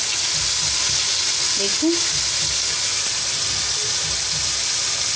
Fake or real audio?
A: real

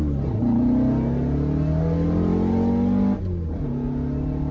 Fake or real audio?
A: real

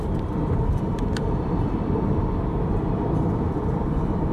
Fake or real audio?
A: fake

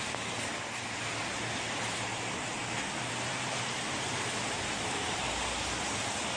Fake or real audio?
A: real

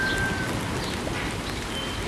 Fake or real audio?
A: real